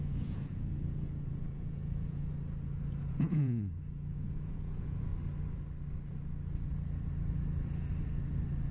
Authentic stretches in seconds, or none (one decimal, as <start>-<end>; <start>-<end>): 2.3-3.1; 5.1-8.7